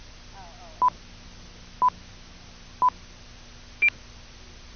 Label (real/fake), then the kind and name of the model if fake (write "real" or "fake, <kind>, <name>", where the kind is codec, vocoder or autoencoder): real